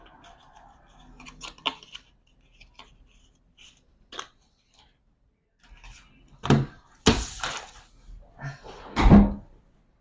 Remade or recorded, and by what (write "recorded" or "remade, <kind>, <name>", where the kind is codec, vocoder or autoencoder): recorded